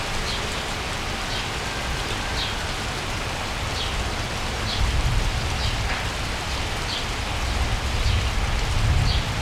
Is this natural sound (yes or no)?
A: yes